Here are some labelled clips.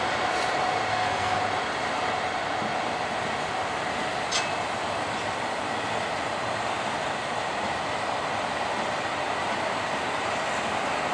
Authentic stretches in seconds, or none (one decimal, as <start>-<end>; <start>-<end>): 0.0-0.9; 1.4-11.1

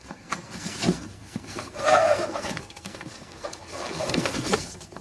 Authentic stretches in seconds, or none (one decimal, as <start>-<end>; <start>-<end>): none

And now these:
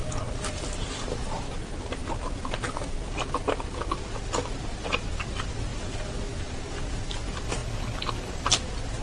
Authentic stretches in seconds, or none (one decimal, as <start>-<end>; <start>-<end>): 0.0-9.0

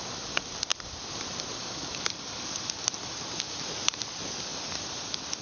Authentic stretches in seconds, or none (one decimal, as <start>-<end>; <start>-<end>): none

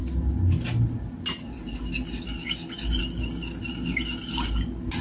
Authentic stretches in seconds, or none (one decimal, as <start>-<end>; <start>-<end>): 0.0-5.0

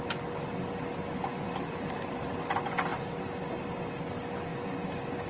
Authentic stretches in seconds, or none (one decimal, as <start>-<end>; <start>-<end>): 0.0-1.3; 2.0-5.3